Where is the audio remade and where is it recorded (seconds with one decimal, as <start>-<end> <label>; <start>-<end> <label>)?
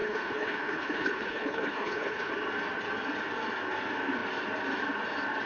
0.0-2.3 remade; 2.3-5.5 recorded